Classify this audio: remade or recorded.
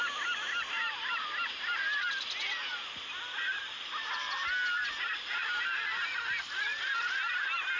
recorded